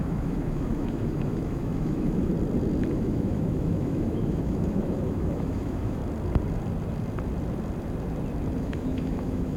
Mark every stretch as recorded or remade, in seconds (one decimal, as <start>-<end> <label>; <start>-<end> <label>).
0.0-2.3 remade; 2.3-2.9 recorded; 2.9-6.0 remade; 6.0-8.6 recorded; 8.6-9.6 remade